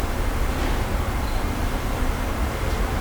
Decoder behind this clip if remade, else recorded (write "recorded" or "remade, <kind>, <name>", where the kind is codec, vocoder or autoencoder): recorded